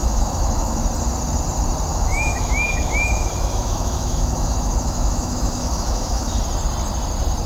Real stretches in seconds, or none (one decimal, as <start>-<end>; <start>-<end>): 0.8-1.9; 6.4-7.5